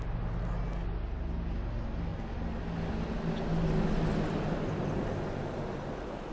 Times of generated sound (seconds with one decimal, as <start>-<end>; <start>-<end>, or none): none